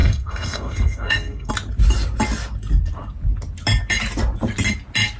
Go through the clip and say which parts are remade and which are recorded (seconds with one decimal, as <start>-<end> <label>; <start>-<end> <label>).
0.0-1.5 remade; 1.5-5.2 recorded